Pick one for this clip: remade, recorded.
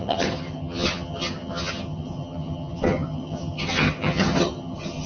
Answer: remade